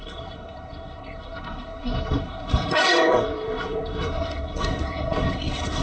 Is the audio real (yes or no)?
no